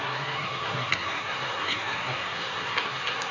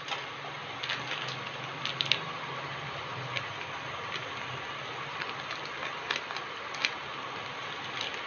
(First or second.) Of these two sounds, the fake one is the first